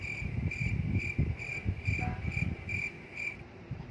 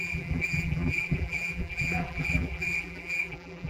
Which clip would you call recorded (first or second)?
first